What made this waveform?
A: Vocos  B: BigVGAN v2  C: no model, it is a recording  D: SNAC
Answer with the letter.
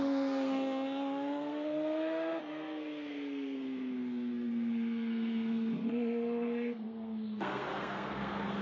D